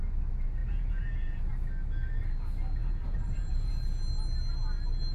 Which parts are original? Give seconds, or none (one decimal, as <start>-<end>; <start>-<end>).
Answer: 0.0-0.6; 1.5-2.8; 3.7-5.1